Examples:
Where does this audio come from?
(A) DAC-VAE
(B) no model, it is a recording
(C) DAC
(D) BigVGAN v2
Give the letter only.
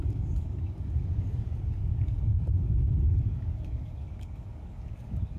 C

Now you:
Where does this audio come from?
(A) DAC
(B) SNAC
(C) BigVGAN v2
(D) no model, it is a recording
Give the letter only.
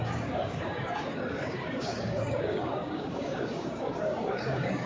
A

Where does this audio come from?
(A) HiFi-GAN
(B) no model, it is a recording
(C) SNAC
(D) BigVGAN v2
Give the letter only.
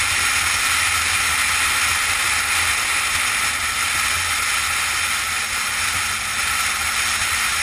B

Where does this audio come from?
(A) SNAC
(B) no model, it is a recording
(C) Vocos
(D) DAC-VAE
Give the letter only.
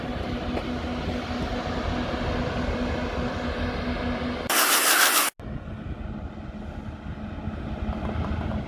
B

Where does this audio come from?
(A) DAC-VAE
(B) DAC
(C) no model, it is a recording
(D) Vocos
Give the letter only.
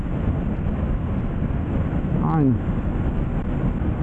C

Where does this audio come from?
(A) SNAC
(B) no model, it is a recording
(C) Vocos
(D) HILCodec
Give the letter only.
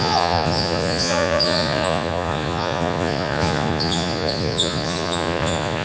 C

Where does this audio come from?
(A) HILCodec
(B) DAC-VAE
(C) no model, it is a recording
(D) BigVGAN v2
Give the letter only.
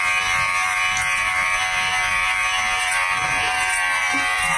D